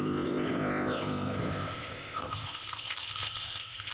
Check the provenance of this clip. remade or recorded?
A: remade